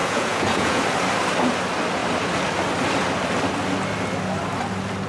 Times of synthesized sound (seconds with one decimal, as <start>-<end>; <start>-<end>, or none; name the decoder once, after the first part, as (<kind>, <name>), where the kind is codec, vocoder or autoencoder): 0.0-0.8 (vocoder, Vocos)